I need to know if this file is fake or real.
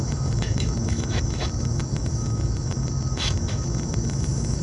fake